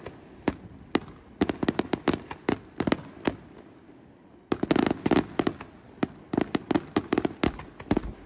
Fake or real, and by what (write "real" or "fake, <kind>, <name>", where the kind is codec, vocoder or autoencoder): real